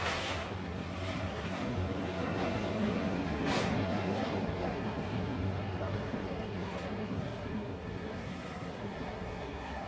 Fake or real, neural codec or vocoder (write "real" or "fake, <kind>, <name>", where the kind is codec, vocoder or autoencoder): fake, codec, SNAC